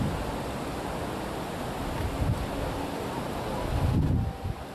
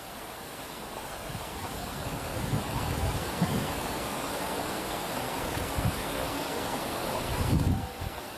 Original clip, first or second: first